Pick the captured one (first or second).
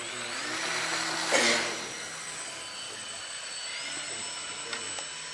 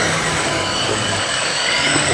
first